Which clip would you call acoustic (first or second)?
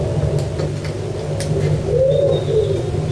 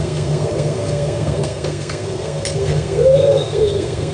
first